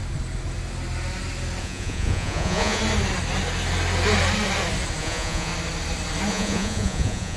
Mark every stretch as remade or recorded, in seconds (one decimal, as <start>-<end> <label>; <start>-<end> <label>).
0.0-1.6 recorded; 1.6-2.8 remade; 2.8-5.0 recorded; 5.0-5.5 remade; 5.5-6.3 recorded; 6.3-7.4 remade